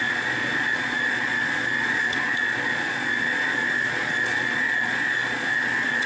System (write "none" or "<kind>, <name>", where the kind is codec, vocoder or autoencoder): vocoder, Vocos